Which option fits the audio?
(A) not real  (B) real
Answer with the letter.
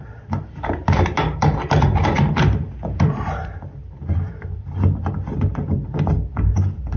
A